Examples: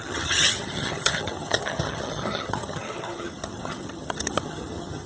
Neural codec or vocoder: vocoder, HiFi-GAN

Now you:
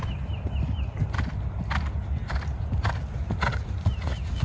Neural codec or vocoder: none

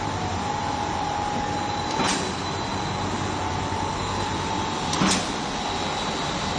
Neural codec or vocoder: none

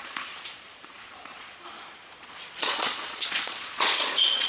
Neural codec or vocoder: vocoder, Vocos